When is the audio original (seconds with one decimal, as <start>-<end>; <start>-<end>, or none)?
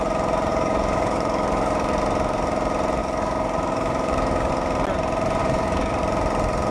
0.0-0.5; 2.0-3.0; 4.5-5.4; 5.9-6.7